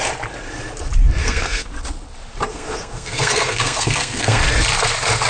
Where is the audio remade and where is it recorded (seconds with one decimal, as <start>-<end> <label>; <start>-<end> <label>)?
0.0-1.2 recorded; 1.2-1.7 remade; 1.7-2.5 recorded; 2.5-4.4 remade; 4.4-5.3 recorded